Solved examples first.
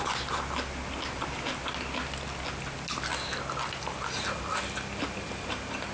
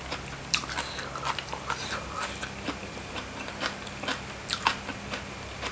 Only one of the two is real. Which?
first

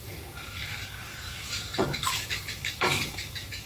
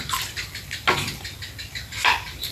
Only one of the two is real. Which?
second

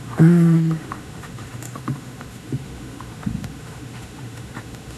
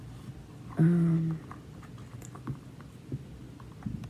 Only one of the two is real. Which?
second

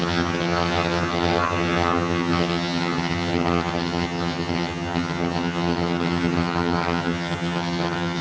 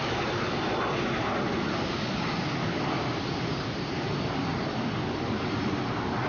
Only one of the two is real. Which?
second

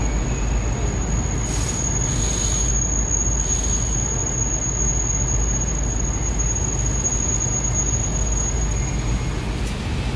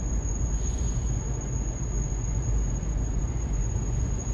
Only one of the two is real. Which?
first